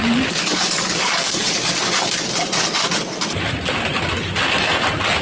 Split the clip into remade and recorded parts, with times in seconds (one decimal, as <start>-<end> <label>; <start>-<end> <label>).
0.0-2.1 remade; 2.1-5.2 recorded